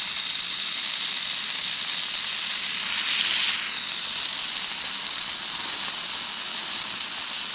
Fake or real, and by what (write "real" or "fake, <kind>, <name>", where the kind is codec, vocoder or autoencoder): real